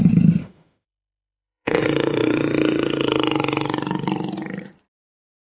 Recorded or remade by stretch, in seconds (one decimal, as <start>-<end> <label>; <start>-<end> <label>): 0.0-0.4 recorded; 0.4-1.8 remade; 1.8-5.6 recorded

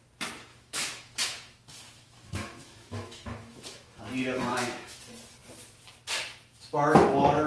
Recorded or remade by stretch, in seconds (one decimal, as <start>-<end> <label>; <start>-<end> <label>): 0.0-0.5 recorded; 0.5-4.0 remade; 4.0-4.5 recorded; 4.5-5.0 remade; 5.0-7.5 recorded

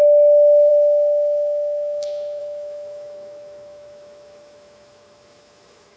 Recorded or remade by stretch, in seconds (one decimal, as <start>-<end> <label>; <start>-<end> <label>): 0.0-6.0 remade

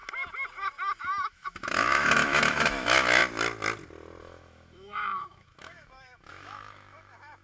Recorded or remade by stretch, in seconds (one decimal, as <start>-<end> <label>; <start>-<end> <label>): 0.0-1.0 recorded; 1.0-3.2 remade; 3.2-4.2 recorded; 4.2-7.4 remade

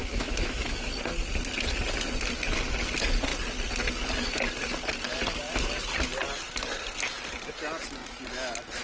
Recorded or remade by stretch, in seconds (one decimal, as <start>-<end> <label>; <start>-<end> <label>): 0.0-0.9 remade; 0.9-8.8 recorded

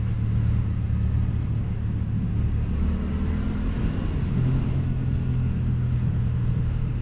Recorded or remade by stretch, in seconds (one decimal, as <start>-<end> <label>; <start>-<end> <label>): 0.0-0.7 remade; 0.7-1.6 recorded; 1.6-2.3 remade; 2.3-4.3 recorded; 4.3-4.8 remade; 4.8-5.5 recorded; 5.5-7.0 remade

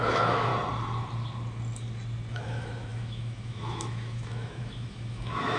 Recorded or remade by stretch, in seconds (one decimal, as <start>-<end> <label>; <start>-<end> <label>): 0.0-0.5 remade; 0.5-2.3 recorded; 2.3-5.6 remade

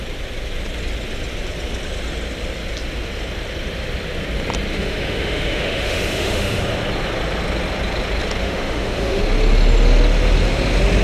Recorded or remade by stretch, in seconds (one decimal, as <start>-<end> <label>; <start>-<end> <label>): 0.0-4.7 recorded; 4.7-6.6 remade; 6.6-8.4 recorded; 8.4-9.2 remade; 9.2-11.0 recorded